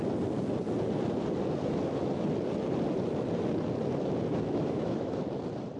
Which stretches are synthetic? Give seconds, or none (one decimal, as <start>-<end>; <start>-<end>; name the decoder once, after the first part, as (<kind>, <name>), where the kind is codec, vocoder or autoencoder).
4.3-5.2 (autoencoder, DAC-VAE)